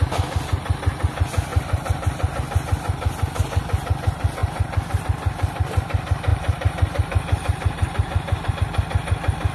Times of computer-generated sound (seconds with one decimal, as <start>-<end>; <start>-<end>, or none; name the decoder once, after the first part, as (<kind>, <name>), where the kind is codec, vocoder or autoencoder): 1.5-2.4 (vocoder, BigVGAN v2); 6.3-8.5